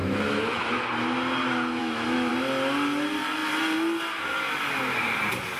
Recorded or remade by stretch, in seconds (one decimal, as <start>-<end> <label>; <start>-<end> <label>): 0.0-0.7 remade; 0.7-1.8 recorded; 1.8-2.3 remade; 2.3-5.6 recorded